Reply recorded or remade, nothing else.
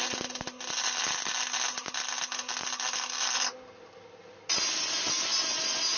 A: recorded